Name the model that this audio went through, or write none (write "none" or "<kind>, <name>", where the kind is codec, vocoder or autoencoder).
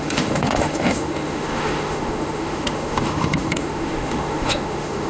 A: autoencoder, DAC-VAE